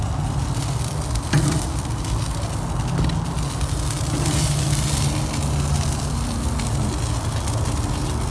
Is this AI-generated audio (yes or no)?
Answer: no